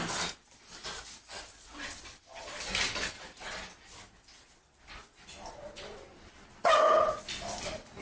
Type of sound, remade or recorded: recorded